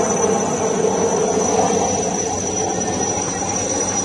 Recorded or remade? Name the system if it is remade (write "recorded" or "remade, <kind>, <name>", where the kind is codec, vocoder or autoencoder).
recorded